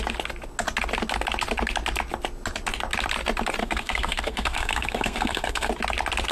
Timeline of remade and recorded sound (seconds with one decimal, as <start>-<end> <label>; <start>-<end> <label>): 0.0-3.6 recorded; 3.6-5.7 remade; 5.7-6.3 recorded